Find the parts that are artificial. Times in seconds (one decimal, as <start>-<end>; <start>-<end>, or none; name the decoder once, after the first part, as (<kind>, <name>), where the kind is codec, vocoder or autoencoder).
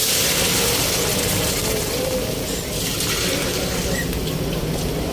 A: none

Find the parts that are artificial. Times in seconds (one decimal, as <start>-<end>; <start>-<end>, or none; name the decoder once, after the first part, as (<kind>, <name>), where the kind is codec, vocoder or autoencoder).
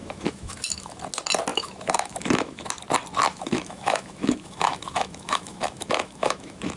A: 0.0-1.0 (autoencoder, DAC-VAE); 1.5-2.7; 3.3-6.8